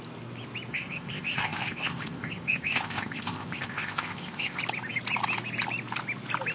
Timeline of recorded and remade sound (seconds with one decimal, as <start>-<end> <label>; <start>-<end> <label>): 0.0-0.7 recorded; 0.7-4.6 remade; 4.6-6.5 recorded

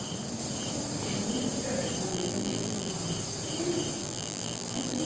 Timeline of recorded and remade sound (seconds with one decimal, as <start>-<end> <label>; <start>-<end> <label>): 0.0-2.1 recorded; 2.1-2.9 remade; 2.9-4.0 recorded; 4.0-5.0 remade

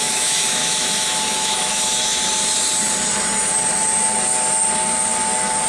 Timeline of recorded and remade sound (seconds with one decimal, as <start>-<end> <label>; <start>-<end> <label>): 0.0-2.2 remade; 2.2-5.7 recorded

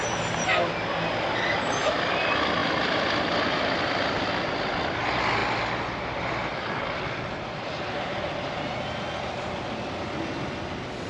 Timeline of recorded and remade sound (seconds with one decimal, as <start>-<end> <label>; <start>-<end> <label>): 0.0-11.1 recorded

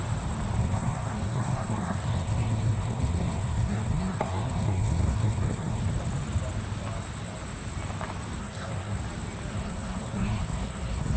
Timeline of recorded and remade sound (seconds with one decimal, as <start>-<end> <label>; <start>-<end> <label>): 0.0-0.6 recorded; 0.6-5.8 remade; 5.8-8.4 recorded; 8.4-9.0 remade; 9.0-9.5 recorded; 9.5-11.2 remade